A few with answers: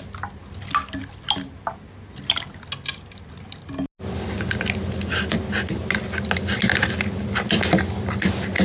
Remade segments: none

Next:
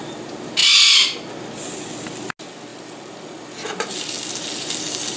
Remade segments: none

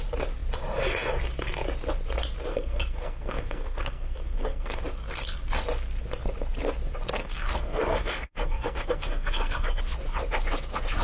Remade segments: 2.5-4.8 (codec, SNAC); 7.2-9.8

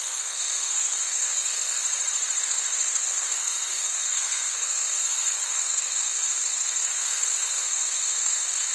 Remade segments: 0.0-1.8 (codec, SNAC); 2.4-8.7

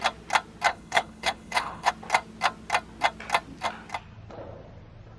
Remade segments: 0.7-1.9 (codec, HILCodec)